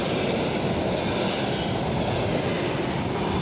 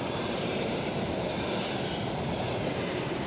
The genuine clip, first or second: first